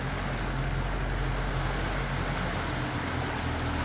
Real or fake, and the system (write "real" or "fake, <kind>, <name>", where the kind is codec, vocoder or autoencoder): real